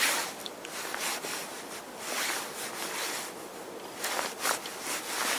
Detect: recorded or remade recorded